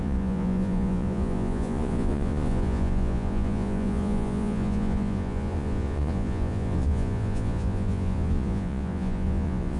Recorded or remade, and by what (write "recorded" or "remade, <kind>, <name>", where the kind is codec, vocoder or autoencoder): remade, vocoder, Vocos